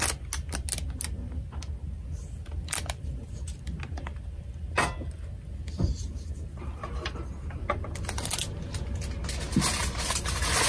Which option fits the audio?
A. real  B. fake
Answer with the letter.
A